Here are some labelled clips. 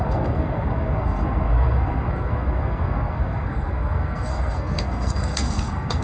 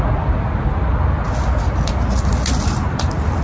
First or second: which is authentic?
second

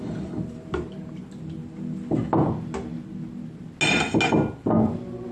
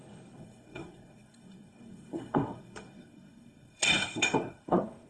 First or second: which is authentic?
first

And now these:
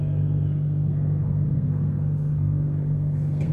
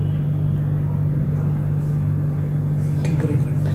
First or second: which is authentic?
second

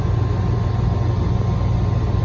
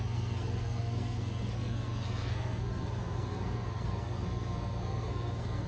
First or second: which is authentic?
first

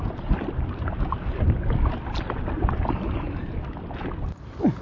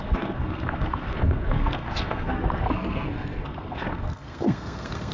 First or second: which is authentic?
first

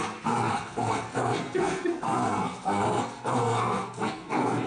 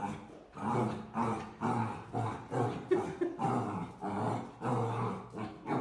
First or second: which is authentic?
second